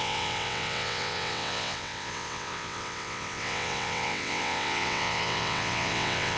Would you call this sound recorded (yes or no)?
no